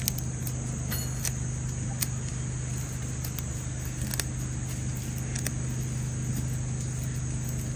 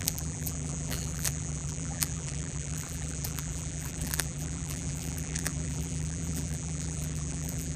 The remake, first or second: second